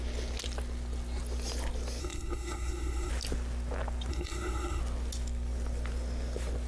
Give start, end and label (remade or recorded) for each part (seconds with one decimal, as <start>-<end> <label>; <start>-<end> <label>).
0.0-2.0 recorded; 2.0-3.1 remade; 3.1-4.1 recorded; 4.1-4.8 remade; 4.8-6.7 recorded